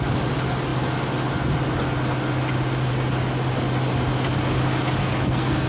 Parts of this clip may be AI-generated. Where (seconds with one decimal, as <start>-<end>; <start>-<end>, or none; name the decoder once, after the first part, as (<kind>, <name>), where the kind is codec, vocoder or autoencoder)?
5.0-5.7 (codec, SNAC)